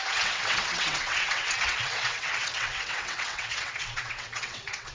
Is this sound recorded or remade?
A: remade